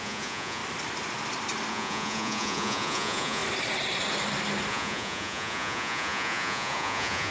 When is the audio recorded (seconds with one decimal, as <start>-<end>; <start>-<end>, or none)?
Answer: 0.6-1.7; 3.4-4.7